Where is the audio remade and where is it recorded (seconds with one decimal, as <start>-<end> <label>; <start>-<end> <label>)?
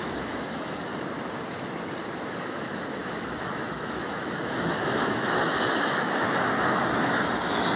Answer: 0.0-0.9 remade; 0.9-2.4 recorded; 2.4-7.8 remade